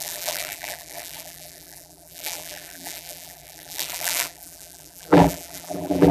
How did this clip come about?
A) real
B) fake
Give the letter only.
B